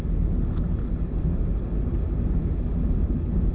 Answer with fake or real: real